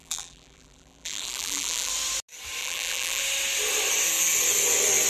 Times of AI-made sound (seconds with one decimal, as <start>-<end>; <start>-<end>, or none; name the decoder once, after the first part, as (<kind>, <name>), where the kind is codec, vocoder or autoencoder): 0.0-1.9 (vocoder, BigVGAN v2); 2.6-3.2